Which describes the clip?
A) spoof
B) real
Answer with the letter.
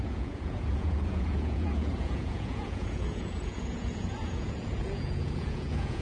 A